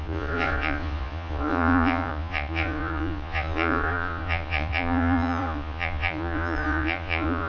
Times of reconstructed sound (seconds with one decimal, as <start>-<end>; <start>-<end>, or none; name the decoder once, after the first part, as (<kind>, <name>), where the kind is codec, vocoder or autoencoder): 0.0-7.5 (vocoder, Vocos)